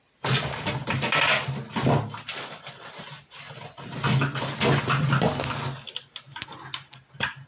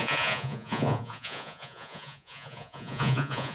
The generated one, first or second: second